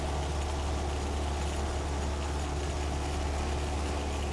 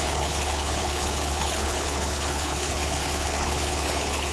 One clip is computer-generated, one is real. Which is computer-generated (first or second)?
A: second